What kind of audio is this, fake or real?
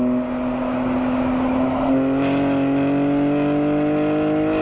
real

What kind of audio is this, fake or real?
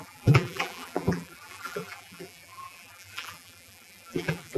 fake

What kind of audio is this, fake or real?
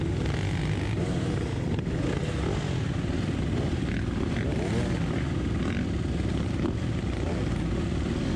real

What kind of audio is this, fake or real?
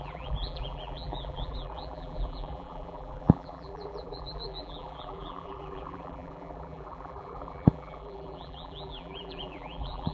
fake